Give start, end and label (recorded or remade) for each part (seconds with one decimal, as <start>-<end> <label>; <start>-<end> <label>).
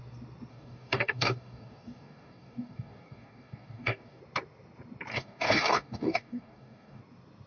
0.0-0.5 recorded; 0.5-4.2 remade; 4.2-5.1 recorded; 5.1-7.0 remade; 7.0-7.5 recorded